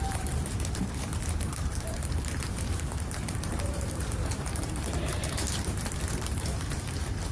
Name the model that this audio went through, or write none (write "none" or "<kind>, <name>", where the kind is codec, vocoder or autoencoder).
vocoder, BigVGAN v2